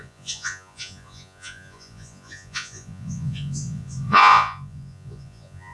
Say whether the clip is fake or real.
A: fake